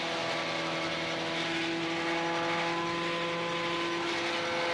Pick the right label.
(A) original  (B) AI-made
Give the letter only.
A